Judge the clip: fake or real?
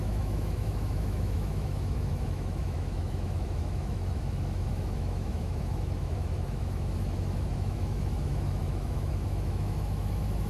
fake